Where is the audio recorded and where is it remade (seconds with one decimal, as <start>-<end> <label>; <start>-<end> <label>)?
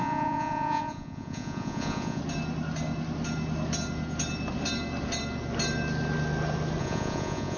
0.0-2.2 remade; 2.2-6.8 recorded; 6.8-7.6 remade